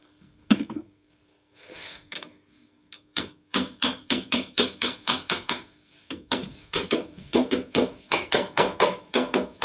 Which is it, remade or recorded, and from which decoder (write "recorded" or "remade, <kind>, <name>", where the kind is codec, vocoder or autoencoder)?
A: remade, codec, SNAC